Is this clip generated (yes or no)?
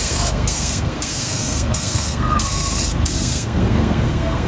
yes